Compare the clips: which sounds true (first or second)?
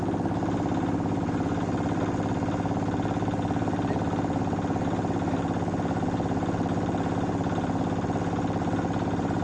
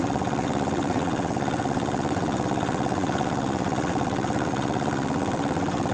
first